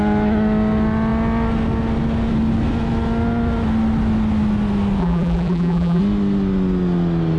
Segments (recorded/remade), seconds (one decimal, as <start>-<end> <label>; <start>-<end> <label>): 0.0-5.0 recorded; 5.0-6.0 remade; 6.0-7.4 recorded